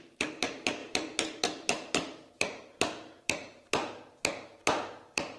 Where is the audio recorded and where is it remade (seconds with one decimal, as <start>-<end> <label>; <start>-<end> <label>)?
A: 0.0-5.4 remade